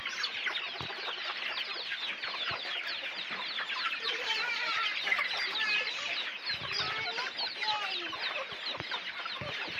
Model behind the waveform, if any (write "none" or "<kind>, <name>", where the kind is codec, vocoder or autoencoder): none